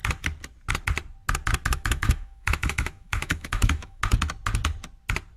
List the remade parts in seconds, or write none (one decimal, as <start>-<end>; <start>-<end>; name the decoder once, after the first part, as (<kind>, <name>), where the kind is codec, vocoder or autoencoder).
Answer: 1.7-4.0 (autoencoder, DAC-VAE)